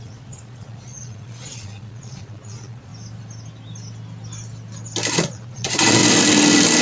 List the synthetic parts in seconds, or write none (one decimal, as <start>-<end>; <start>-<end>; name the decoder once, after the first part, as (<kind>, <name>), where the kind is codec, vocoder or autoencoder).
0.0-2.9 (vocoder, Vocos); 5.1-6.0